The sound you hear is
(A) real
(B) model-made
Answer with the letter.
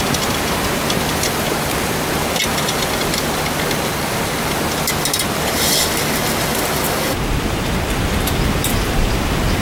A